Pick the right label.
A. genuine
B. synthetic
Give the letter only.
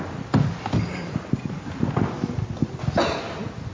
A